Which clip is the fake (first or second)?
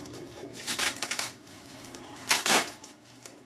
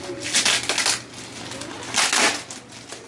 first